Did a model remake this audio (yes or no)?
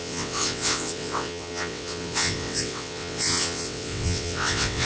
yes